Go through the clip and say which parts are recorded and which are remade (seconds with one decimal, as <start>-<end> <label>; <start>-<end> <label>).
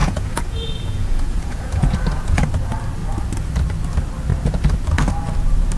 0.0-2.4 remade; 2.4-5.8 recorded